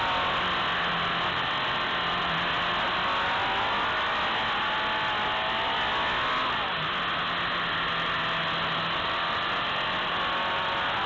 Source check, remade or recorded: recorded